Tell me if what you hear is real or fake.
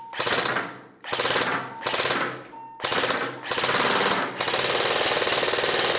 real